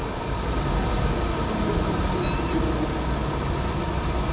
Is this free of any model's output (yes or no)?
yes